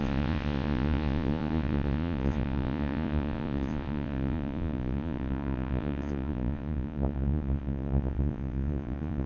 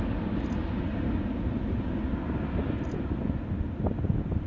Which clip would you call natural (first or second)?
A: second